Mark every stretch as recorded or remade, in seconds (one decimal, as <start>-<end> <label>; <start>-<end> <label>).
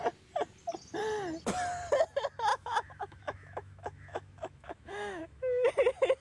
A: 0.0-2.5 recorded; 2.5-5.7 remade; 5.7-6.2 recorded